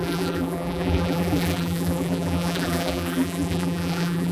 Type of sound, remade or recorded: remade